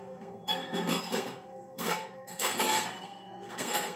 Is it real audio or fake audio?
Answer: fake